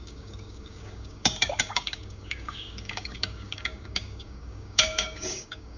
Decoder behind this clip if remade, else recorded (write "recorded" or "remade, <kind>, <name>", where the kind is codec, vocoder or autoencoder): remade, codec, DAC